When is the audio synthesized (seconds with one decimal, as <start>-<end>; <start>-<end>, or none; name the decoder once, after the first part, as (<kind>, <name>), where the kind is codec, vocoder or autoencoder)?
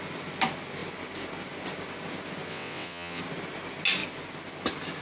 2.5-3.2 (vocoder, WaveNeXt)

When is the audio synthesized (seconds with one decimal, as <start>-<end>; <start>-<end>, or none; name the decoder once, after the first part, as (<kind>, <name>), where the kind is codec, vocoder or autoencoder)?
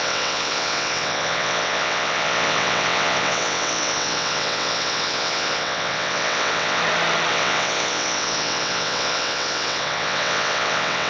0.0-6.8 (vocoder, WaveNeXt); 7.3-11.1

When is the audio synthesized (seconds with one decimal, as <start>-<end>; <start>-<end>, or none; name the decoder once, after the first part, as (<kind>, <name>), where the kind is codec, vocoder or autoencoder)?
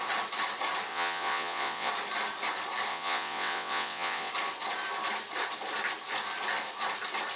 0.9-1.9 (vocoder, WaveNeXt); 2.9-4.3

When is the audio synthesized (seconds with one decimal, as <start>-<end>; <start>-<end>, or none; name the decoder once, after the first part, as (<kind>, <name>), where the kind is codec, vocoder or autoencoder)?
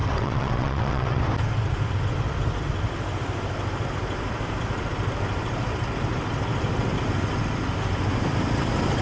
0.0-1.2 (vocoder, WaveNeXt)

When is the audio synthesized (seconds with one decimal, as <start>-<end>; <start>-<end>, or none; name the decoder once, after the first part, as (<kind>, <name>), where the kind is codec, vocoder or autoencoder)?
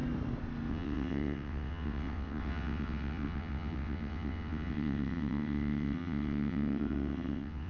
0.7-7.7 (vocoder, WaveNeXt)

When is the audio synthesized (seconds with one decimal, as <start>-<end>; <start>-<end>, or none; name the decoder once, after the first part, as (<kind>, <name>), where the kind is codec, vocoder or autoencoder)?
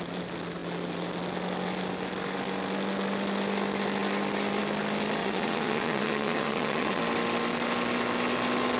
5.2-7.0 (vocoder, WaveNeXt)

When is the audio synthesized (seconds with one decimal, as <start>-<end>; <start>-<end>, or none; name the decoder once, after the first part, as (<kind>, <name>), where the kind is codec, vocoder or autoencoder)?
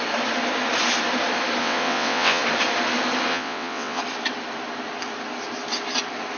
1.6-2.4 (vocoder, WaveNeXt); 3.3-4.0